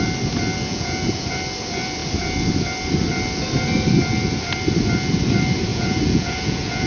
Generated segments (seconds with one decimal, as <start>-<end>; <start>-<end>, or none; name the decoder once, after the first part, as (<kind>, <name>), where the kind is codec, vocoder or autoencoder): 0.7-1.3 (vocoder, Vocos); 5.7-6.9